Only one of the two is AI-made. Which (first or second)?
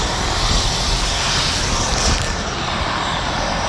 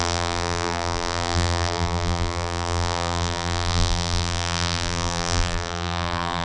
second